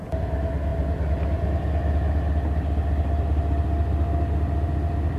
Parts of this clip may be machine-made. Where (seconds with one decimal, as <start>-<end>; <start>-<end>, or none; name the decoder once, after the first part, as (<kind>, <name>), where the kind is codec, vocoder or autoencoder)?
none